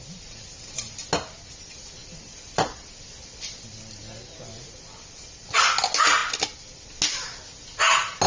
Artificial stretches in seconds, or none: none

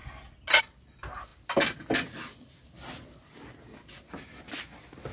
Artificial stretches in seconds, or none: none

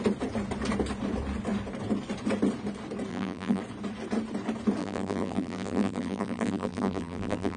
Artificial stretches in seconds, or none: 3.1-3.6 (vocoder, BigVGAN v2); 4.8-7.6

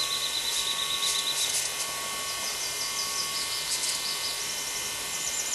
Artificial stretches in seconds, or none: 0.0-0.6 (vocoder, BigVGAN v2)

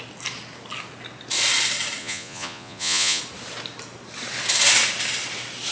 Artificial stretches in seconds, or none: 2.0-3.2 (vocoder, Vocos)

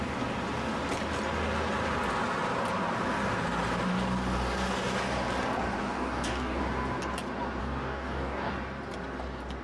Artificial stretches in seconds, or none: 5.8-6.6 (codec, DAC); 7.6-8.5